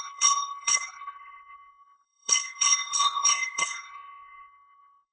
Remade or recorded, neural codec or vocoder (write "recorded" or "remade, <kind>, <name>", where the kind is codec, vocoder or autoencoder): remade, codec, SNAC